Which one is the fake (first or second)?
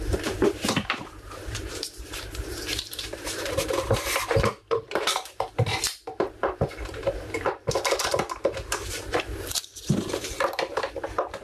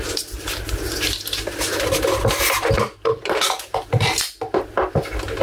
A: first